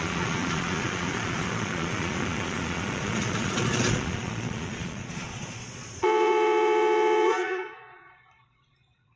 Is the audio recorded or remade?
remade